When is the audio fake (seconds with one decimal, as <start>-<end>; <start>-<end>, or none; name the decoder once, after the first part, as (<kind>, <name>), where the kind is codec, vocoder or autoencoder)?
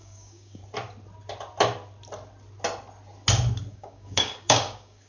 0.0-0.6 (codec, DAC); 3.7-5.1